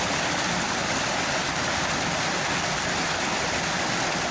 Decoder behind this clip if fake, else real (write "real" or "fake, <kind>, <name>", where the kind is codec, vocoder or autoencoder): real